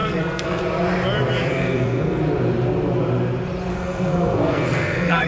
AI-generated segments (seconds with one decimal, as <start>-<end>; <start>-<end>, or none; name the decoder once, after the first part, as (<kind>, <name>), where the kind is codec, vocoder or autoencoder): 0.0-0.6 (codec, SNAC); 1.5-2.2; 3.7-5.3